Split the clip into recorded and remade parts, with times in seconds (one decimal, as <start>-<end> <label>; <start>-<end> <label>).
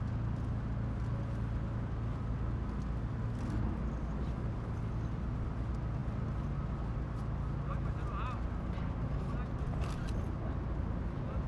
0.0-11.5 recorded